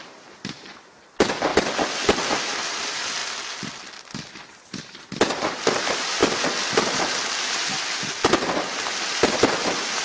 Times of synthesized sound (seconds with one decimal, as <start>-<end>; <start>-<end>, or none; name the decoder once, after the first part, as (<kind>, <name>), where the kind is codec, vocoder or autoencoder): 0.0-1.5 (vocoder, BigVGAN v2); 2.4-3.2; 3.9-6.2